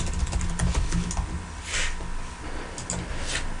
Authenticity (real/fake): real